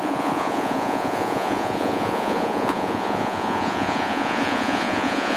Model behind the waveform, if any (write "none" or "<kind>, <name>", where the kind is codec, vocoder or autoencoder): vocoder, Vocos